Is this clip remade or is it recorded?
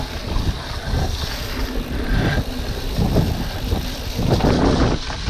recorded